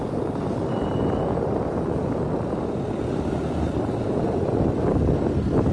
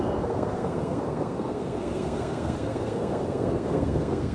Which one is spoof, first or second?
second